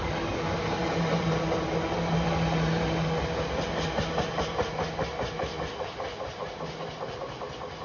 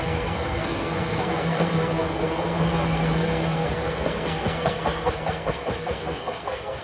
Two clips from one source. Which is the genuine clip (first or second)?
first